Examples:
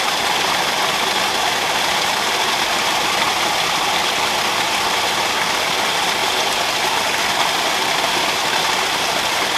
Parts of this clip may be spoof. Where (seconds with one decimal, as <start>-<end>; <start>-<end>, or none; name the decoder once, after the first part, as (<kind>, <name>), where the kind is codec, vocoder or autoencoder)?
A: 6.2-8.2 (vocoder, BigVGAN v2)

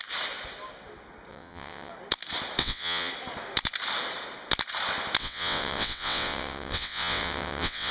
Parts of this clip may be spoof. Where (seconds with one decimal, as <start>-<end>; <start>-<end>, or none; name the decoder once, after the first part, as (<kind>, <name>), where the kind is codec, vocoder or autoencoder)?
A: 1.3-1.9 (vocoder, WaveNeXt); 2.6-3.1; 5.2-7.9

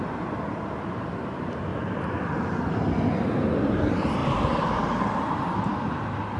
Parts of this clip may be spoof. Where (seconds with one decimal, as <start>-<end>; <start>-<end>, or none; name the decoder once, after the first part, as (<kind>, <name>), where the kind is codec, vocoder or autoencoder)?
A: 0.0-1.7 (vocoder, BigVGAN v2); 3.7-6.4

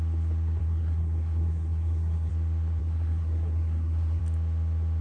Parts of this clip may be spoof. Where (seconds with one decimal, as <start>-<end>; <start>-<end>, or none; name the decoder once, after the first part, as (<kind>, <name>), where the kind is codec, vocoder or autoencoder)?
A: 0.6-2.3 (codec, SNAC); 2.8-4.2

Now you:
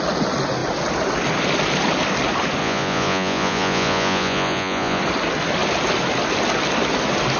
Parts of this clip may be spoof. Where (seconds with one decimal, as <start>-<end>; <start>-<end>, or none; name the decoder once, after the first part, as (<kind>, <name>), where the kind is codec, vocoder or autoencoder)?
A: 2.6-5.0 (vocoder, Vocos)